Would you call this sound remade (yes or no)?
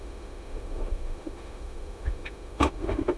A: yes